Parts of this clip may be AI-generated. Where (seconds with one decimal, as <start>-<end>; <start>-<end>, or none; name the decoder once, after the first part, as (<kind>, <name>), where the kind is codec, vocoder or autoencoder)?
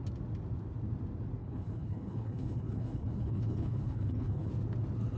1.4-4.5 (codec, HILCodec)